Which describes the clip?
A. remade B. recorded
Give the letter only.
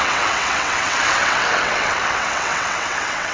A